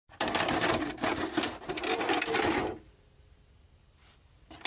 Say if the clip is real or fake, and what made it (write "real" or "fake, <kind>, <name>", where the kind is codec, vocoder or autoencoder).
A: real